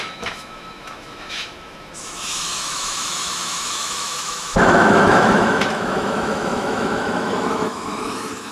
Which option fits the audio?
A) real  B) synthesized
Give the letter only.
B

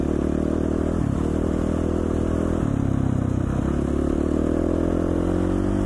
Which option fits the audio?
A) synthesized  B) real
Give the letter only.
B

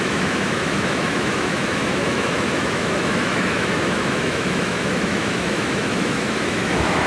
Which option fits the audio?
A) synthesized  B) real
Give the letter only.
A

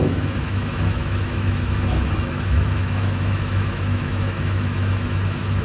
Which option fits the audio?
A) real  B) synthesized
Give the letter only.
B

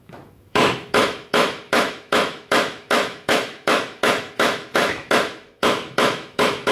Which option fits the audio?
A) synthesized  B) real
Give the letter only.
A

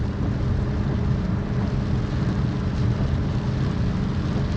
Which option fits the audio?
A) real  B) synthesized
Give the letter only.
A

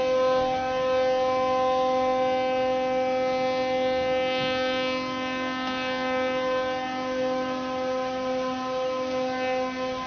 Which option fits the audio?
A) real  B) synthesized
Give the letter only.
A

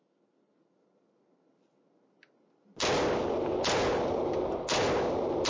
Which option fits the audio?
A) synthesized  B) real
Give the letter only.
B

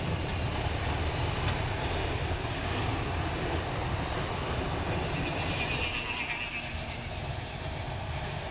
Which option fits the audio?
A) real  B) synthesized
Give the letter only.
A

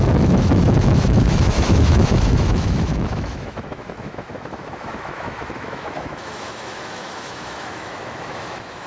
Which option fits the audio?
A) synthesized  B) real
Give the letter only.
A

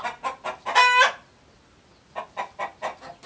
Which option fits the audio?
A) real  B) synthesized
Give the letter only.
A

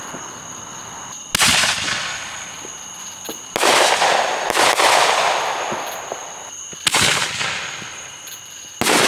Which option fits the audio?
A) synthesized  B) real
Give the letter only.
B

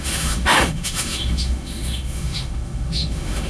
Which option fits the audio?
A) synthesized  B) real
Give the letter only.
A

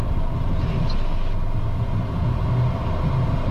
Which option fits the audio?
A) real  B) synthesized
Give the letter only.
A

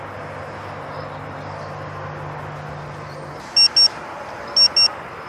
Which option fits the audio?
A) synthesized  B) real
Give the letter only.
B